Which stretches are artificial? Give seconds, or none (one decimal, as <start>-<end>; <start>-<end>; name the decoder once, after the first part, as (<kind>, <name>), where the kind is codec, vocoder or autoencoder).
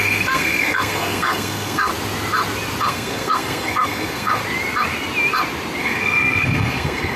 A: 0.0-1.9 (codec, SNAC); 2.8-4.4; 5.8-7.2